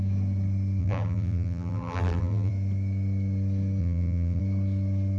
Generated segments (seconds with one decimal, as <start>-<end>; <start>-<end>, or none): 0.8-2.5; 3.8-4.4

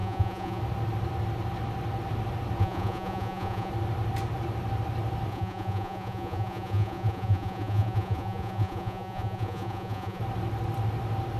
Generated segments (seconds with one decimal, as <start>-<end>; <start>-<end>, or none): 0.0-0.6; 2.6-3.7; 5.3-10.2